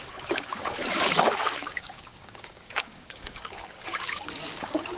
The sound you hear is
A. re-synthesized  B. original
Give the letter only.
A